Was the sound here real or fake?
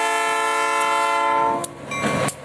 real